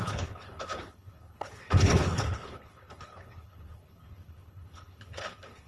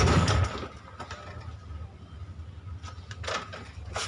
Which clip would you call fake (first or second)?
first